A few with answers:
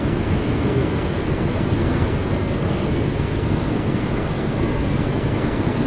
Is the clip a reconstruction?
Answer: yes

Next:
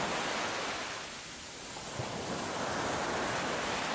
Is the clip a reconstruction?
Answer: no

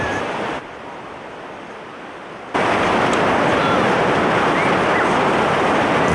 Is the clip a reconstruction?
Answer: no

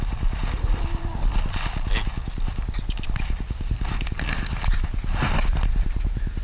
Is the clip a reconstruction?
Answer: no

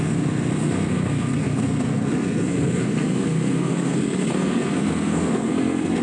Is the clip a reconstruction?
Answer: yes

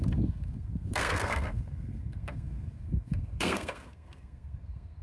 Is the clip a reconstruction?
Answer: yes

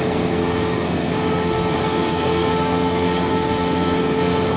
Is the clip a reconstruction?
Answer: yes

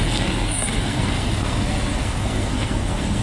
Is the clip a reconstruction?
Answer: yes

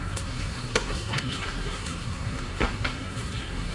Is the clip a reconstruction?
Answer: yes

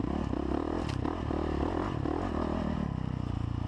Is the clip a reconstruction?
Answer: no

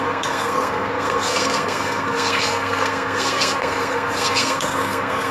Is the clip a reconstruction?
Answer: yes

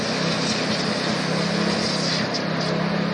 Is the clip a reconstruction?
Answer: no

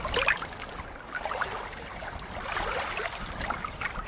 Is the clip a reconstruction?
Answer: no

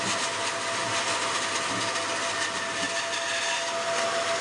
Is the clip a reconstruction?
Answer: no